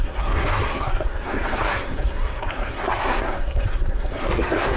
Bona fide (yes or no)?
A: no